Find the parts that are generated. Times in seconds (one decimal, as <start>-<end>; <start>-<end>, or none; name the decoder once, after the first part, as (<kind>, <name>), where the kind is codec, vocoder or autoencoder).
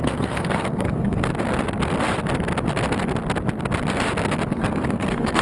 0.0-1.3 (codec, SNAC); 4.5-5.4